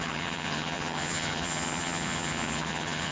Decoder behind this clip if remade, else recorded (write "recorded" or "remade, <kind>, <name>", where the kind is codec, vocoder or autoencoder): remade, vocoder, HiFi-GAN